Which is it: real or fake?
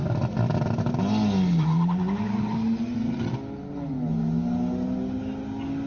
real